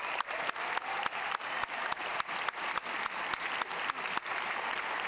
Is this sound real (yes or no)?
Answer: yes